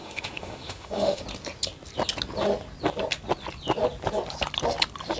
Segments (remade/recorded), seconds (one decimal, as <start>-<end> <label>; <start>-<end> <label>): 0.0-1.2 remade; 1.2-5.2 recorded